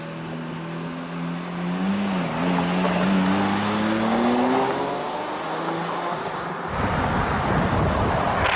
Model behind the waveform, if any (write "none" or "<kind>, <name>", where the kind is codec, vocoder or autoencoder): none